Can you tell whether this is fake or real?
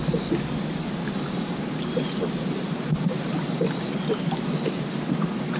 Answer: real